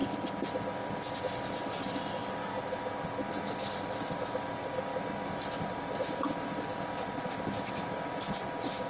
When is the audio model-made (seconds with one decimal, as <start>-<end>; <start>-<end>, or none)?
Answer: none